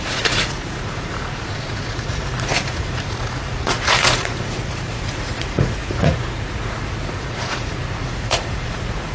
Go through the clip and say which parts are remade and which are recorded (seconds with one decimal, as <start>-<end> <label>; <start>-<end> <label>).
0.0-9.1 remade